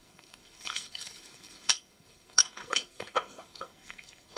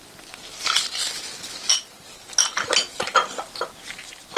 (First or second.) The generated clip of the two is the first